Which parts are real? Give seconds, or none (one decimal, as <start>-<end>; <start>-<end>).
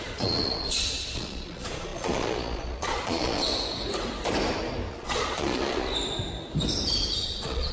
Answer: 3.5-4.9; 5.9-7.2